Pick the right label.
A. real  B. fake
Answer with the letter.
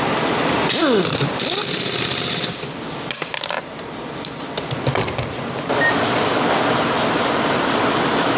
A